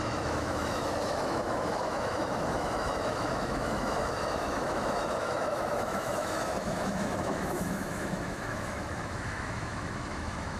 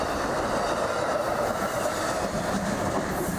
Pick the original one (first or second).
second